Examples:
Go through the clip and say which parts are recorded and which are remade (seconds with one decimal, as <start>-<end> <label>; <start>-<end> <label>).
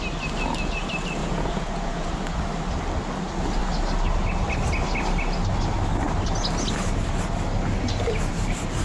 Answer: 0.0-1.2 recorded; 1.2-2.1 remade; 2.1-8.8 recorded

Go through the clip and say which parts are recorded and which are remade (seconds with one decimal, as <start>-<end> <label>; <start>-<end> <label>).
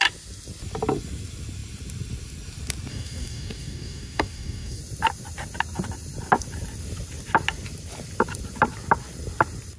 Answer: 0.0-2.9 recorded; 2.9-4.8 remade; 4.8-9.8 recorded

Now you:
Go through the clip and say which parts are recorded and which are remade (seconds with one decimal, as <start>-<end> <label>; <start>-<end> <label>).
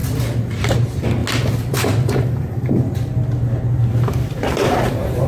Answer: 0.0-0.6 recorded; 0.6-1.2 remade; 1.2-2.3 recorded; 2.3-5.3 remade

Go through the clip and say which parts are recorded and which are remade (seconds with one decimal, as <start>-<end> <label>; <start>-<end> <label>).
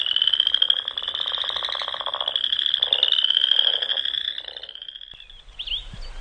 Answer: 0.0-6.2 recorded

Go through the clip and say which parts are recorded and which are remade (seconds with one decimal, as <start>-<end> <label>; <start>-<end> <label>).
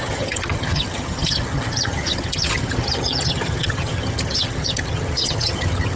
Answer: 0.0-6.0 remade